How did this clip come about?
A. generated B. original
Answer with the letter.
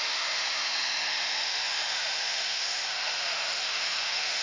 A